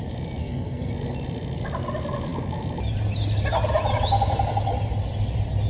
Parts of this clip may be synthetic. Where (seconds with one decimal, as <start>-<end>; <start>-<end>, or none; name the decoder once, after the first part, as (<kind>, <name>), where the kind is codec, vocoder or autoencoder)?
0.4-0.9 (codec, SNAC)